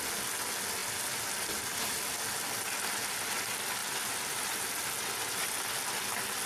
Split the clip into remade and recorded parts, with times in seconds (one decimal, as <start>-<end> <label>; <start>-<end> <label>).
0.0-0.8 recorded; 0.8-1.8 remade; 1.8-3.8 recorded; 3.8-4.7 remade; 4.7-6.5 recorded

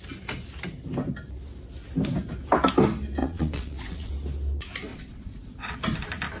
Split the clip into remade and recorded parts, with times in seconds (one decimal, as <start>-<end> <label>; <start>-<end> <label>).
0.0-3.2 recorded; 3.2-4.1 remade; 4.1-4.9 recorded; 4.9-5.8 remade; 5.8-6.4 recorded

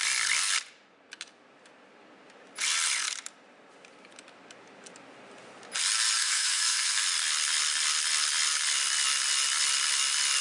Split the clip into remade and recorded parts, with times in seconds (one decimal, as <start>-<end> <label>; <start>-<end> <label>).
0.0-6.2 recorded; 6.2-7.0 remade; 7.0-10.4 recorded

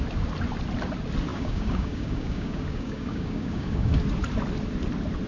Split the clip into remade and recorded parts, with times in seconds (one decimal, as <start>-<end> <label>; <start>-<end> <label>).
0.0-1.3 recorded; 1.3-4.0 remade; 4.0-5.3 recorded

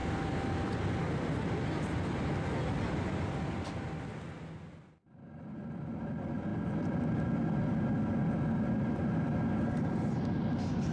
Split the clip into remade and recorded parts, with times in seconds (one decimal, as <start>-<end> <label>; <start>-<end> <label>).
0.0-10.9 recorded